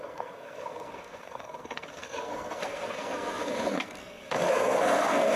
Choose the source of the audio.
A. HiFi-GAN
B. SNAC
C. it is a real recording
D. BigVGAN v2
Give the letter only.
B